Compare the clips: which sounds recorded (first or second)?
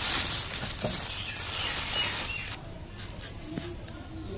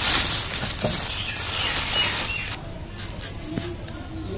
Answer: second